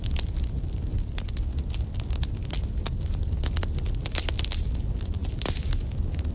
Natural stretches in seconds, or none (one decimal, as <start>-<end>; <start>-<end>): 0.0-6.3